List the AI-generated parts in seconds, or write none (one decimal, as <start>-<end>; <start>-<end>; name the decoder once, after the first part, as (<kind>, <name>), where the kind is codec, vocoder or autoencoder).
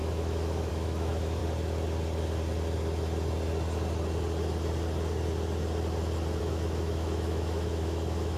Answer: 0.0-1.4 (autoencoder, DAC-VAE); 6.4-8.4